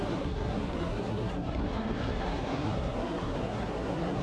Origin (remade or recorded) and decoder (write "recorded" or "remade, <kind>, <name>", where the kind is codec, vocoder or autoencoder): remade, codec, SNAC